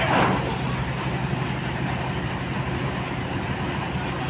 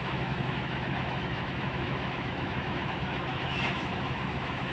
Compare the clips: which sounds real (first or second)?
first